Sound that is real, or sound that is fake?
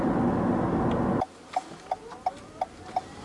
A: real